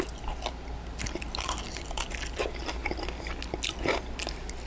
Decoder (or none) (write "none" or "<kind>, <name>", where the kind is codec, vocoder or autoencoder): none